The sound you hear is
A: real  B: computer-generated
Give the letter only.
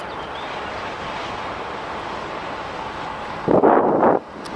A